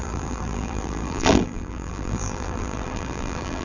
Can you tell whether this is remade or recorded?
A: remade